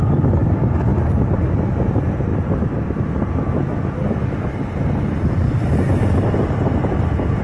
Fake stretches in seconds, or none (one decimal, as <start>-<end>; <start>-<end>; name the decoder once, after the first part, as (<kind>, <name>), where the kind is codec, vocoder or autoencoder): none